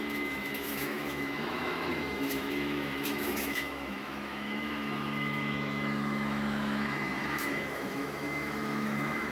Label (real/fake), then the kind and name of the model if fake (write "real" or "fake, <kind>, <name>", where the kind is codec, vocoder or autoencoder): fake, autoencoder, DAC-VAE